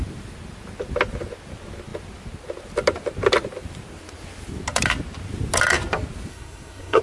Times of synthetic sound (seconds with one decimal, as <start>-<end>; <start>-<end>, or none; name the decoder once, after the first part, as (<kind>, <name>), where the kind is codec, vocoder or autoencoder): 6.3-7.0 (codec, SNAC)